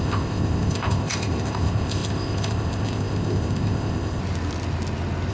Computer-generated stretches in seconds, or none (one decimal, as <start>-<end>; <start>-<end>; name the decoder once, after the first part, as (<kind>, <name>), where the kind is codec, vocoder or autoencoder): 0.0-4.2 (codec, ZipCodec)